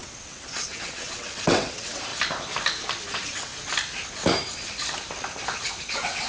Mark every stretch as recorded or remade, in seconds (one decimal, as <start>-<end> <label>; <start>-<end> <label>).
0.0-2.1 remade; 2.1-3.1 recorded; 3.1-3.5 remade; 3.5-5.8 recorded; 5.8-6.3 remade